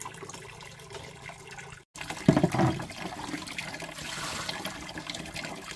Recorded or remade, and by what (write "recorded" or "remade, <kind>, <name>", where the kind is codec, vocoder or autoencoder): recorded